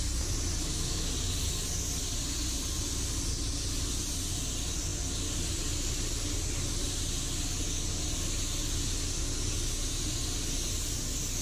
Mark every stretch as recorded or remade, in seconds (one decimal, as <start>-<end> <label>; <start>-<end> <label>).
0.0-0.6 recorded; 0.6-1.1 remade; 1.1-11.4 recorded